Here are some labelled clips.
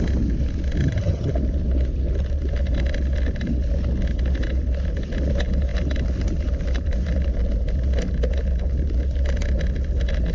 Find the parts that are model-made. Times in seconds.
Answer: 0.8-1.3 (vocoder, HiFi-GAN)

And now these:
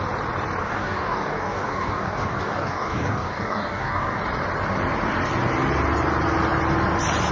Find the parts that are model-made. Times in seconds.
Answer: 0.6-4.2 (codec, DAC)